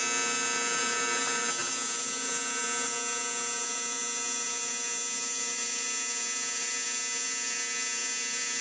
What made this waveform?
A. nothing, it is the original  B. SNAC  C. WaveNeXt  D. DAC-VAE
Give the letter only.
A